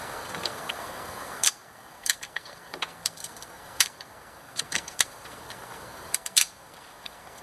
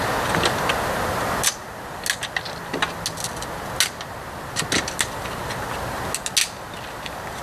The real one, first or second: second